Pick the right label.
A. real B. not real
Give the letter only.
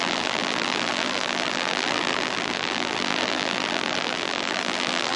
B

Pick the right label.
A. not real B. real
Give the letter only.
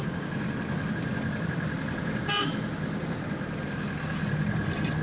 B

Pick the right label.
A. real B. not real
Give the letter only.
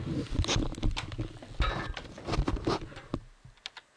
A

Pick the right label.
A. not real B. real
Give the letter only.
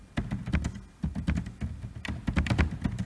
B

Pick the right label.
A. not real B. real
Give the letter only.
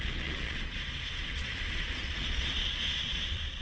A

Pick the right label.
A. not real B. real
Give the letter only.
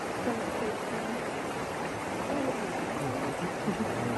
B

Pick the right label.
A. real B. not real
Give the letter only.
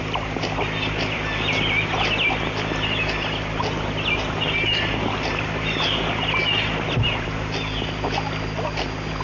A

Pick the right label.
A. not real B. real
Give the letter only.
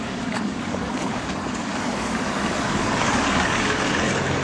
A